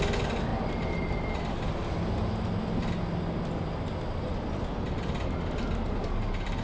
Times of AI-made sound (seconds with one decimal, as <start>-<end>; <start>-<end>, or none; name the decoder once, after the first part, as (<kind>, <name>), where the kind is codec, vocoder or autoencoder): none